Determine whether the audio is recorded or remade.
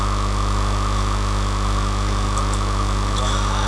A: recorded